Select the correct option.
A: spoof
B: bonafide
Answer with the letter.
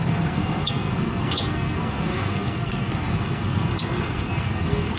A